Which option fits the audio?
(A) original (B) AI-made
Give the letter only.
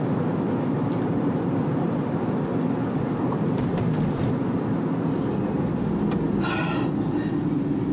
A